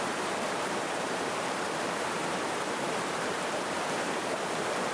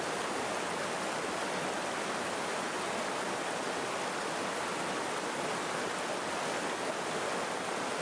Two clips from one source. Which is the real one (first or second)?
second